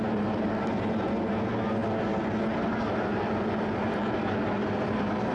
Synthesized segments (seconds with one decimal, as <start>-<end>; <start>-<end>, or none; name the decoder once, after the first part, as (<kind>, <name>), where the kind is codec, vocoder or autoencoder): none